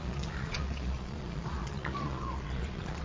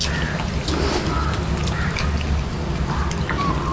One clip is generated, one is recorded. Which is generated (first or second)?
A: first